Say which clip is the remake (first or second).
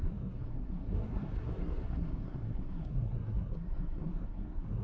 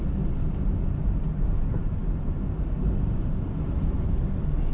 first